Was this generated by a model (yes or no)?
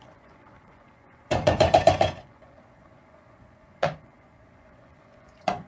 yes